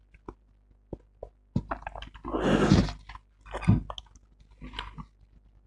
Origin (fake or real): real